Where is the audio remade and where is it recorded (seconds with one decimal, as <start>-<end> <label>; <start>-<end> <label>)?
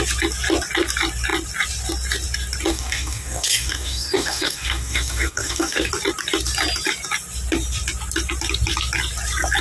0.0-2.7 recorded; 2.7-5.9 remade; 5.9-9.6 recorded